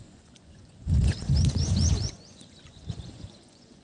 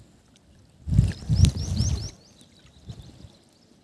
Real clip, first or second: second